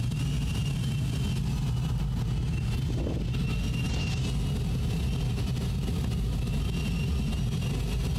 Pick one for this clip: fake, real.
real